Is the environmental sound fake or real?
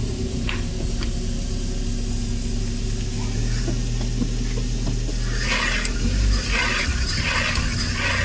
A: real